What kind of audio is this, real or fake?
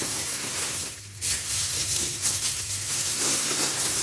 fake